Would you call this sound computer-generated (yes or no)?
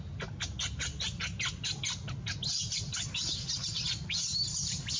no